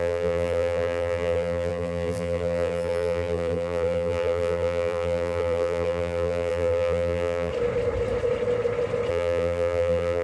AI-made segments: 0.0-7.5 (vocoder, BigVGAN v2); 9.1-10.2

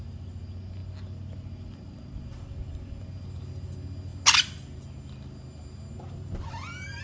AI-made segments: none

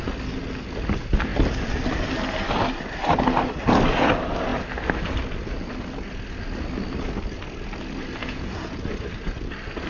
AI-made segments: 8.2-8.8 (vocoder, Vocos)